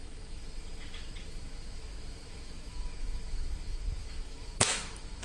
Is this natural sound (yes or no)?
no